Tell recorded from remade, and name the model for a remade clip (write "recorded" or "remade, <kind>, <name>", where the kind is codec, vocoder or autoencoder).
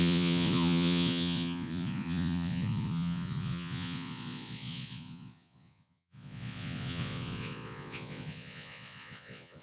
remade, vocoder, Vocos